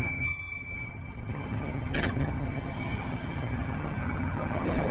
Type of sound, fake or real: fake